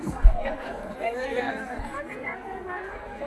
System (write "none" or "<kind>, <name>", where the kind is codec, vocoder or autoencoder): codec, SNAC